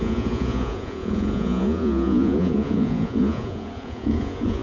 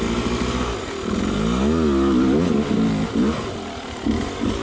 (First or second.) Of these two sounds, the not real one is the first